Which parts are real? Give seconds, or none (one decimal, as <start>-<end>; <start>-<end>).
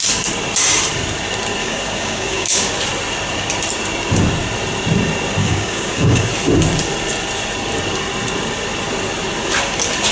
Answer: 0.0-1.6; 2.7-5.4; 6.3-10.1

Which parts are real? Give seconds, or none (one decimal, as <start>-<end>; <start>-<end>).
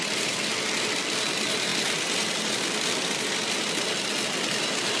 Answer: 0.0-5.0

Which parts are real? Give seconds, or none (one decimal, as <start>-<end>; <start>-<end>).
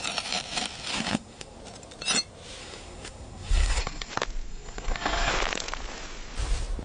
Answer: 0.0-0.9; 1.6-2.6; 4.1-4.5; 5.3-6.8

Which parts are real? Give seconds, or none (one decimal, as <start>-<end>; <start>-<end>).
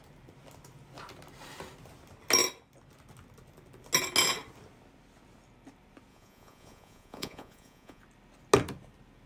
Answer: 0.0-6.1; 8.0-9.3